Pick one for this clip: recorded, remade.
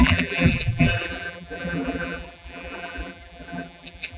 remade